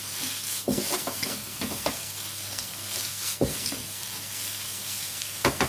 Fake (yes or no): yes